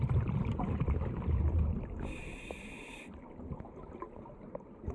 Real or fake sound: real